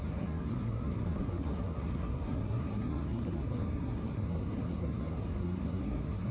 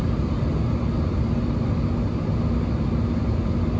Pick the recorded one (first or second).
second